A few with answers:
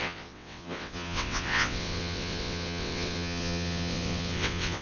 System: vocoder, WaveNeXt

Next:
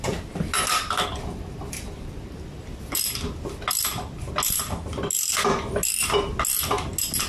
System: none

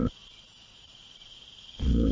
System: vocoder, Vocos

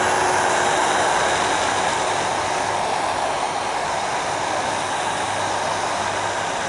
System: none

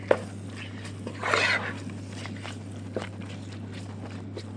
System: none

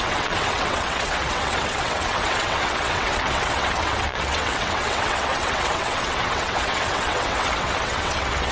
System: vocoder, WaveNeXt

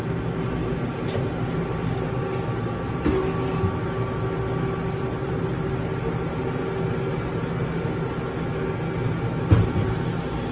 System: none